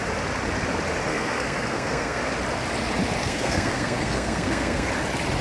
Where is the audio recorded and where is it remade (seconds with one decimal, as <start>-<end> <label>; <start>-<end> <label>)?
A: 0.0-1.1 recorded; 1.1-2.2 remade; 2.2-3.2 recorded; 3.2-4.9 remade; 4.9-5.4 recorded